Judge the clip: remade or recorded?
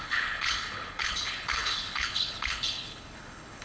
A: remade